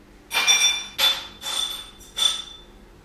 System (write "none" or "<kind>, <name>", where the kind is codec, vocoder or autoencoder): none